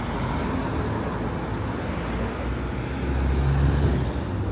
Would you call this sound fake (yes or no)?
no